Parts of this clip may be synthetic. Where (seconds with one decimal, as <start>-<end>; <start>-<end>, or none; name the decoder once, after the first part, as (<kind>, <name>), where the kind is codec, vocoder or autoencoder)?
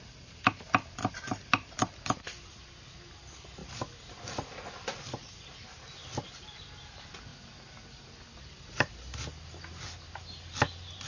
none